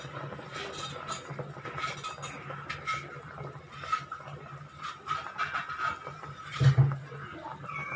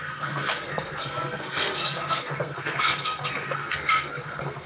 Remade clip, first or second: second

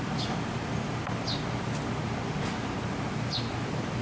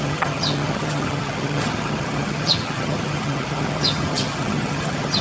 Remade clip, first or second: second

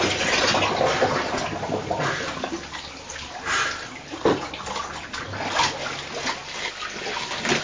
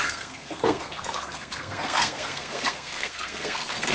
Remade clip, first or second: second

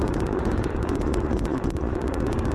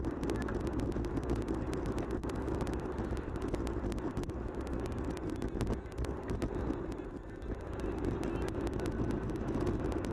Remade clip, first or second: first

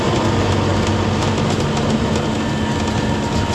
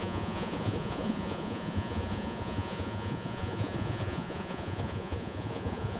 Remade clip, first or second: second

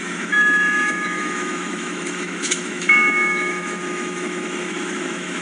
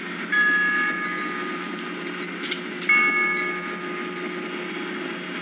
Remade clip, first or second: first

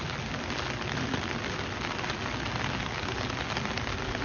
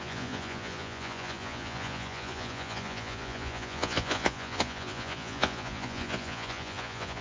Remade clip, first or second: second